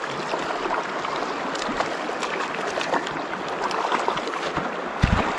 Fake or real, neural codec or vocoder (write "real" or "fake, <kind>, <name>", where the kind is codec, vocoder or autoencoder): real